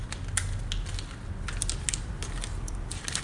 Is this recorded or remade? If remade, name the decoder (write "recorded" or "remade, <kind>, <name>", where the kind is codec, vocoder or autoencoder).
recorded